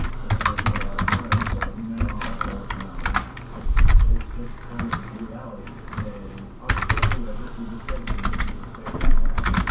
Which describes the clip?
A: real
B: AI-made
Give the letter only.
A